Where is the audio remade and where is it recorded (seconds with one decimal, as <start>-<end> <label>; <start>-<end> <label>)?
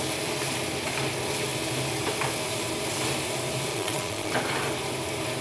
0.0-3.7 recorded; 3.7-4.3 remade; 4.3-5.4 recorded